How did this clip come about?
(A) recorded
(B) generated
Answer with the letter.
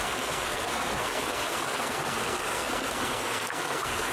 B